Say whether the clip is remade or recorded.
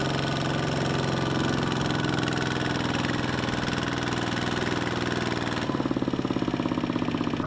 recorded